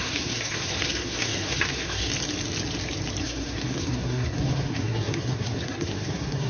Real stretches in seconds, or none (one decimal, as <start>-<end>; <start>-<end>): 2.1-3.2